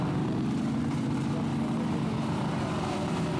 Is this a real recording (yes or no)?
no